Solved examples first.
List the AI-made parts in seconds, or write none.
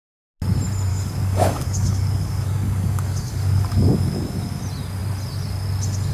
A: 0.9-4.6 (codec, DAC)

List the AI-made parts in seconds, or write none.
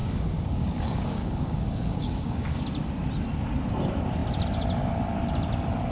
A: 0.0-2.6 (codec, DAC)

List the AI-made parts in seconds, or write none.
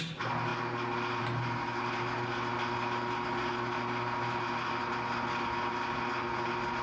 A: none